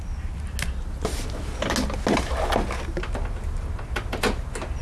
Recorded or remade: recorded